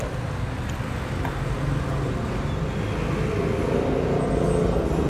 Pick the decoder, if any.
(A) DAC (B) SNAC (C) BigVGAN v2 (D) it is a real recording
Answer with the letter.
D